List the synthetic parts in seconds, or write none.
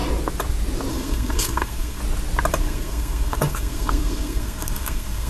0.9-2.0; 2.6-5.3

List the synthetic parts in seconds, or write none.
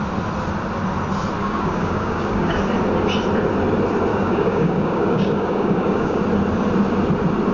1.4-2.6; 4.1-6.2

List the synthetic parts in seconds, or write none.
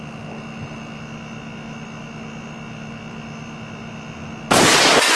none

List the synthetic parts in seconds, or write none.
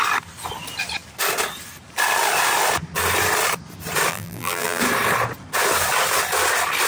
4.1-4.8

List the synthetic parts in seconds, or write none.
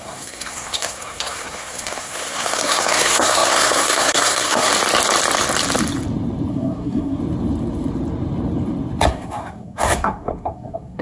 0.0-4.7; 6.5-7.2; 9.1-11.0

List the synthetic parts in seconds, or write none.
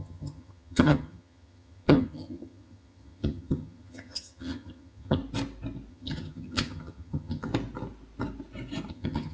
0.0-5.2; 5.9-7.5; 8.9-9.3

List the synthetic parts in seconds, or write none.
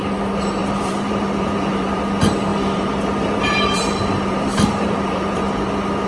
0.6-2.0; 2.5-5.4